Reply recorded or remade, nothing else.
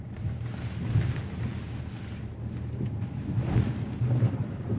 recorded